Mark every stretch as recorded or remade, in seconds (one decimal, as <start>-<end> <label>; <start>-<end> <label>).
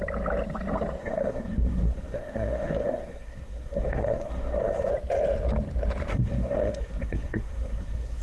0.0-1.0 recorded; 1.0-4.9 remade; 4.9-6.1 recorded; 6.1-8.2 remade